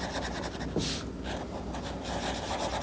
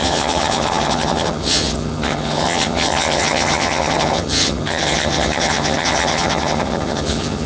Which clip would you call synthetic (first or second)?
second